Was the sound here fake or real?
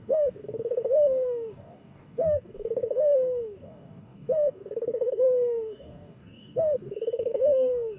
fake